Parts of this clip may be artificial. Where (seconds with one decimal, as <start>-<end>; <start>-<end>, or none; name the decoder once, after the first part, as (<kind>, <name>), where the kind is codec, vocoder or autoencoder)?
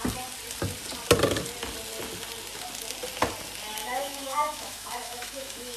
3.8-5.8 (autoencoder, DAC-VAE)